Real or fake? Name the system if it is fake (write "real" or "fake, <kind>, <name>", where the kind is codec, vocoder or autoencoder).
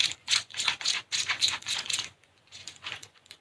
fake, vocoder, Vocos